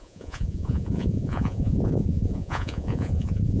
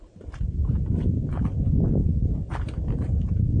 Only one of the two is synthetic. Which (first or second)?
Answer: first